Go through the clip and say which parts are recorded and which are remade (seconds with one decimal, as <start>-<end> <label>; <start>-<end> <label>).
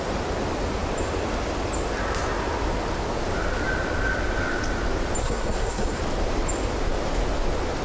0.0-5.2 recorded; 5.2-6.0 remade; 6.0-7.8 recorded